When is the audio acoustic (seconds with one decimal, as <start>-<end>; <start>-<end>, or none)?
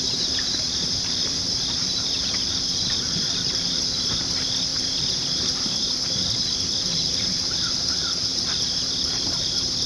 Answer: none